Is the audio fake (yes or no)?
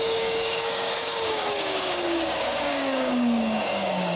yes